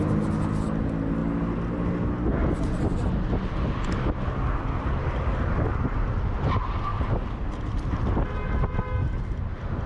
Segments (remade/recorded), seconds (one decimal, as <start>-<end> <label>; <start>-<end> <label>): 0.0-5.7 recorded; 5.7-6.3 remade; 6.3-9.9 recorded